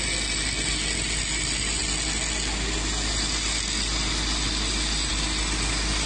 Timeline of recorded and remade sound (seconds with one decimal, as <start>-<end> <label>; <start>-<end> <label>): 0.0-6.1 recorded